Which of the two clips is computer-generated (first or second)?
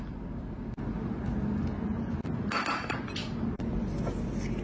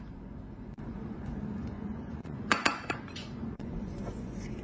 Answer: second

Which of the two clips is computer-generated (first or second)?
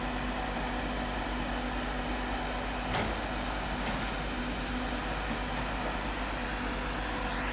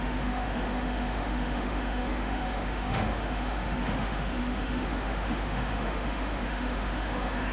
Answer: second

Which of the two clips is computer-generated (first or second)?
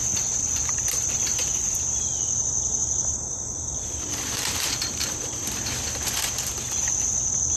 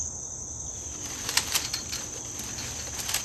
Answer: first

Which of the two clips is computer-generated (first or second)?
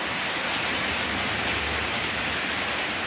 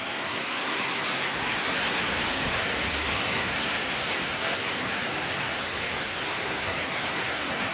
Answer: second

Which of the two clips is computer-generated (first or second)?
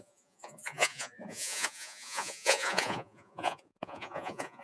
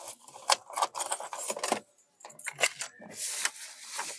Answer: first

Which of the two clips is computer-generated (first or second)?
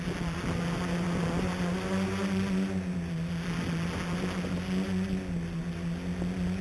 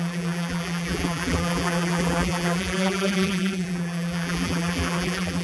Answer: second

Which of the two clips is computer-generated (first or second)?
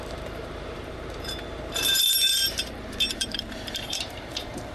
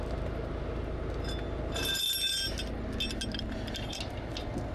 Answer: first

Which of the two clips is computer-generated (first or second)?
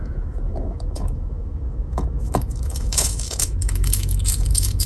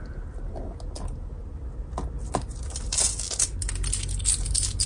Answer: first